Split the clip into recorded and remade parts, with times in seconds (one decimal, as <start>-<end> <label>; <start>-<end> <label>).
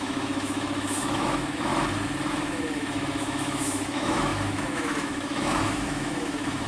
0.0-1.7 remade; 1.7-2.3 recorded; 2.3-6.7 remade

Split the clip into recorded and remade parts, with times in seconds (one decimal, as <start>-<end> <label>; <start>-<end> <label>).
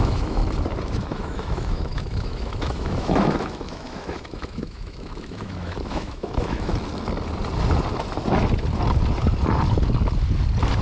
0.0-0.4 remade; 0.4-0.9 recorded; 0.9-6.7 remade; 6.7-10.8 recorded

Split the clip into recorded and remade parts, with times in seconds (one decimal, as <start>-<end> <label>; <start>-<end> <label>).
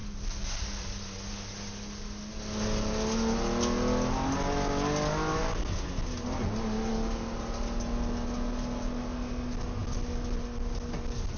0.0-11.4 recorded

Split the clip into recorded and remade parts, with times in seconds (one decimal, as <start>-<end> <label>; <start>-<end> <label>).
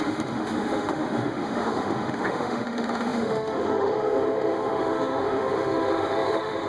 0.0-6.7 remade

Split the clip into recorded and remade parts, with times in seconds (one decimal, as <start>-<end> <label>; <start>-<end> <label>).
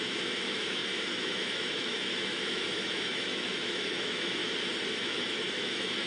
0.0-4.4 remade; 4.4-4.9 recorded; 4.9-6.1 remade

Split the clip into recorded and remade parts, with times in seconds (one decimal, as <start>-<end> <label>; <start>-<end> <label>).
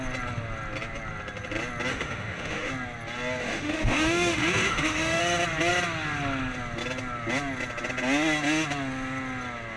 0.0-1.9 recorded; 1.9-2.7 remade; 2.7-3.4 recorded; 3.4-5.2 remade; 5.2-9.8 recorded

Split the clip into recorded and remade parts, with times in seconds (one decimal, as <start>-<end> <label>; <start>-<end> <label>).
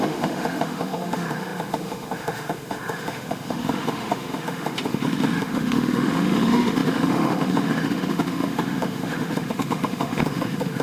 0.0-10.8 remade